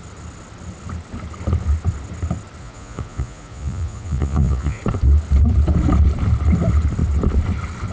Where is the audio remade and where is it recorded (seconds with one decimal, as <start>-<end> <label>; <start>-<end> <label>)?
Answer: 0.0-2.6 recorded; 2.6-4.8 remade; 4.8-7.9 recorded